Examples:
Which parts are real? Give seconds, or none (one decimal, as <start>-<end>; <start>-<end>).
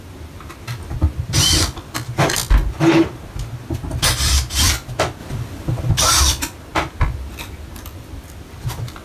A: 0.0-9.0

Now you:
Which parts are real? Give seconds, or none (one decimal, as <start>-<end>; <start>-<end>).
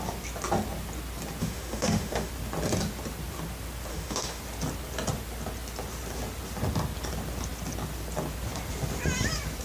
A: 0.0-1.4; 2.3-3.9; 4.4-9.6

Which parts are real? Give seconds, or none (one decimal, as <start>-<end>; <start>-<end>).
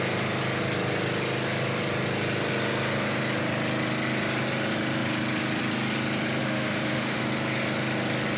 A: 0.0-6.4; 7.2-8.4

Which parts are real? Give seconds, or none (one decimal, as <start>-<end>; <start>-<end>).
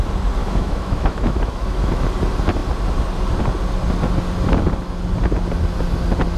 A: 0.0-0.4; 2.0-6.4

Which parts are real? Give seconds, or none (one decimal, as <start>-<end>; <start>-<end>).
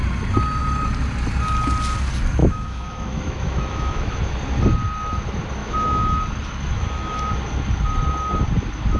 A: 0.0-2.4; 4.3-5.6; 6.2-6.7; 7.3-9.0